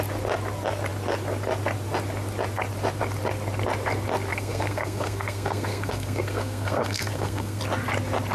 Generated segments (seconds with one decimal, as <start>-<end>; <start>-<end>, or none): 4.3-7.6